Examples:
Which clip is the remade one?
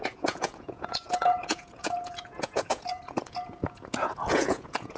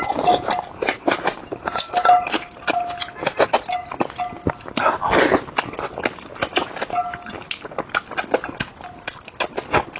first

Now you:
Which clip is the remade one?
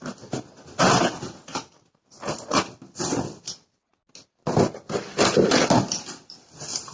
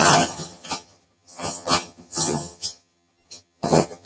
second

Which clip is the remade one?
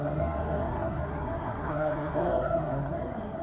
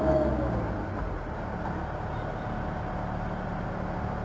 first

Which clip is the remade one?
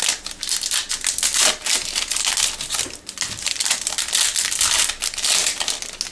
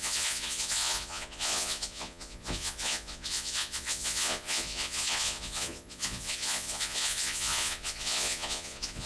second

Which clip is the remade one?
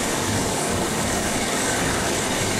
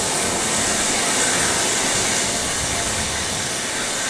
first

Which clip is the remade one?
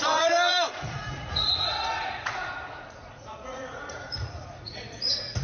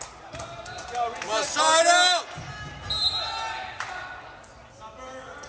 first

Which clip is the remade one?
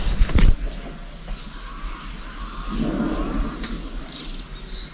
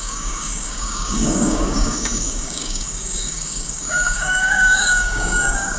second